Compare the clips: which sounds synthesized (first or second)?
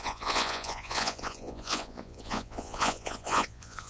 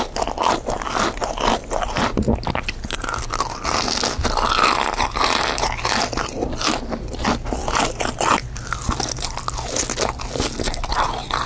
first